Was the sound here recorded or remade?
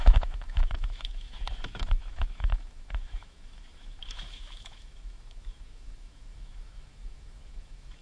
remade